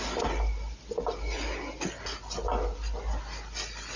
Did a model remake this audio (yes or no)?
no